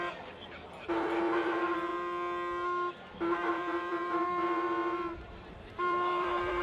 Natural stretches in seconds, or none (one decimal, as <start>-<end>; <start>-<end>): 1.9-2.9